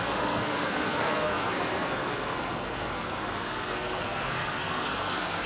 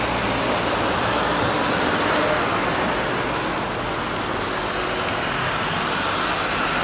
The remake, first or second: first